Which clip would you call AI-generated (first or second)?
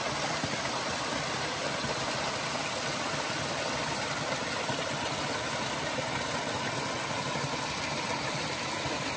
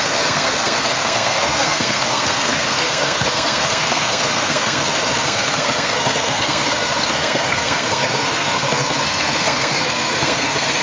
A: second